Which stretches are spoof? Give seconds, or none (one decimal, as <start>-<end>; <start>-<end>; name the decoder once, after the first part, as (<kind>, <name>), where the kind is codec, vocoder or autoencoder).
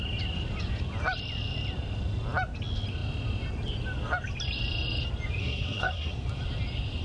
5.4-6.1 (codec, SNAC)